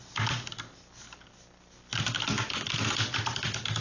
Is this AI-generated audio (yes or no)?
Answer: no